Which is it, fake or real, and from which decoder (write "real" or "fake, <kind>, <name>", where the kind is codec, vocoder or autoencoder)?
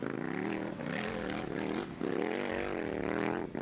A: real